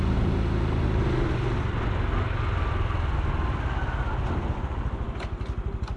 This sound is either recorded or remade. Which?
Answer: recorded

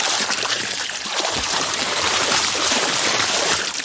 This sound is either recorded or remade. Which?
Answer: remade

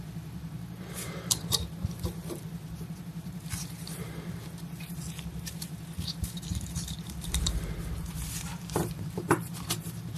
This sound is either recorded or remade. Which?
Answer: remade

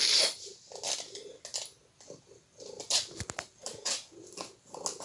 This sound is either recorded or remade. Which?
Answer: recorded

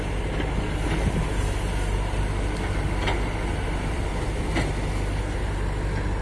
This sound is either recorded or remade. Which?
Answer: recorded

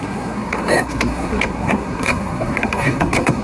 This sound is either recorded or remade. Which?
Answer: remade